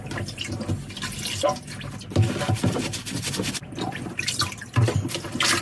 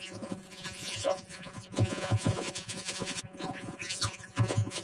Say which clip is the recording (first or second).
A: first